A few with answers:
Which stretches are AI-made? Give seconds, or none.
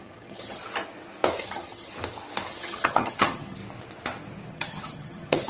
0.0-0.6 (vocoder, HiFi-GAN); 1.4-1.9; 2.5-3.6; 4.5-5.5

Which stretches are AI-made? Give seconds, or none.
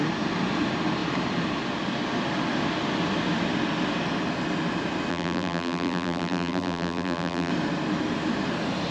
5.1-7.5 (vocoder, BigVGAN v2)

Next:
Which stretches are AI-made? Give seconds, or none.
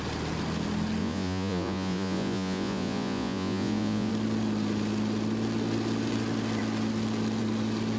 1.0-4.1 (vocoder, Vocos)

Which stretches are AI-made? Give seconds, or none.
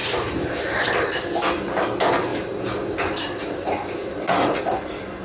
0.0-0.5 (vocoder, BigVGAN v2); 2.3-4.6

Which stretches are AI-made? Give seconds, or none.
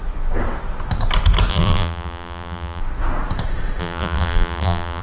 1.5-2.8 (vocoder, BigVGAN v2); 3.8-5.0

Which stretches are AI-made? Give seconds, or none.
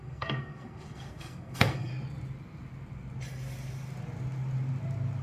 0.0-1.9 (codec, SNAC)